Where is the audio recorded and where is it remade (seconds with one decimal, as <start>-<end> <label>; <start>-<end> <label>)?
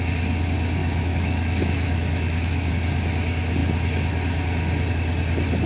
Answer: 0.0-0.8 recorded; 0.8-2.7 remade; 2.7-5.7 recorded